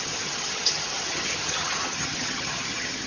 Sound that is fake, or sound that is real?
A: fake